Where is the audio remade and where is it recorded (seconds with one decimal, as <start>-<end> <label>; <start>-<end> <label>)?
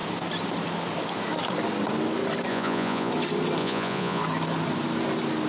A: 0.0-2.5 recorded; 2.5-3.1 remade; 3.1-3.6 recorded; 3.6-4.2 remade; 4.2-5.5 recorded